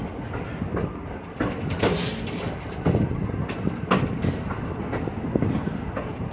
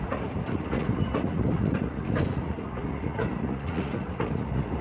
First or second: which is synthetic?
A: second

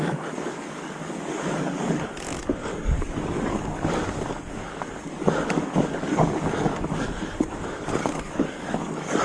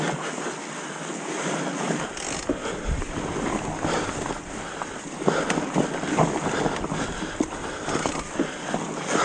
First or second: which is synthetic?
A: first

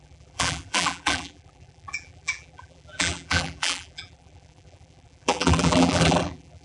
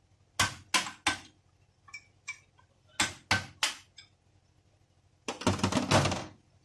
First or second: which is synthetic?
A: first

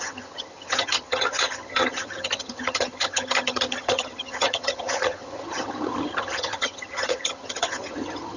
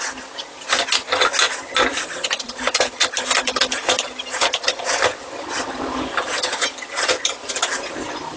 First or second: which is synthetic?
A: first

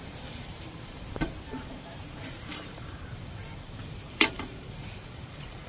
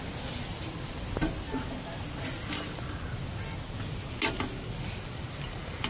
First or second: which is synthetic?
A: first